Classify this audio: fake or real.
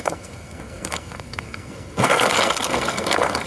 fake